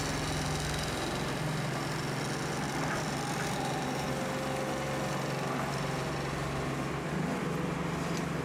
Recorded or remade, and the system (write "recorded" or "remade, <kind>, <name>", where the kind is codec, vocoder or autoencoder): recorded